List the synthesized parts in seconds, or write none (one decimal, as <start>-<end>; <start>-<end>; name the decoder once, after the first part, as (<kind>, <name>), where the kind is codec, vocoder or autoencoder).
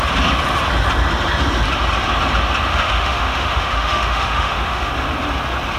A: 2.7-4.9 (autoencoder, DAC-VAE)